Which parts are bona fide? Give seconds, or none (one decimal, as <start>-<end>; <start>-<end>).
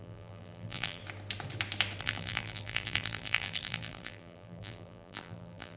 1.0-2.0